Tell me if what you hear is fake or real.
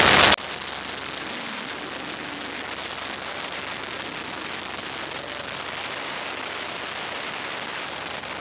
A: real